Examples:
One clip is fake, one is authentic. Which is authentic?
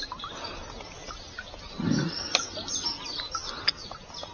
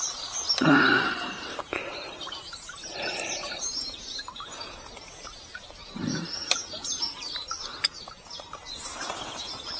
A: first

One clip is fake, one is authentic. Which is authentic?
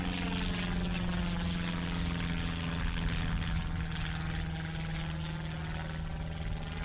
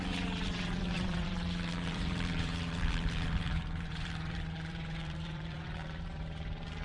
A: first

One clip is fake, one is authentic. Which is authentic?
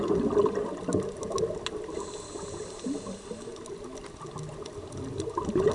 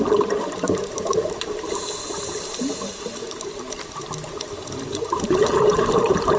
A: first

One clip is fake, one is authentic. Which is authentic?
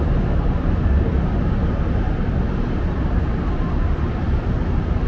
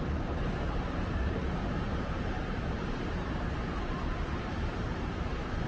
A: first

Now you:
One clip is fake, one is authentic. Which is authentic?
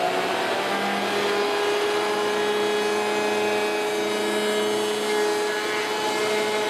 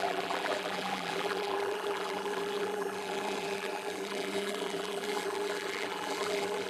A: first